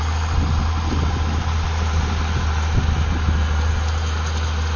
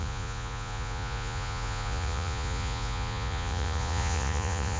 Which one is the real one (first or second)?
first